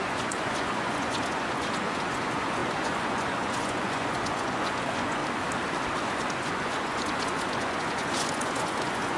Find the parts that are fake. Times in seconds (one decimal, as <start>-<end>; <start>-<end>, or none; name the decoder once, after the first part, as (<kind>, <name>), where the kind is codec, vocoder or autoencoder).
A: 0.0-5.2 (vocoder, Vocos); 6.0-9.2